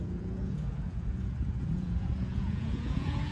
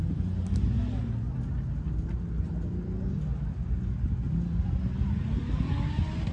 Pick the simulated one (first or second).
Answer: first